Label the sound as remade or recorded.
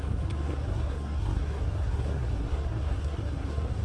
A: remade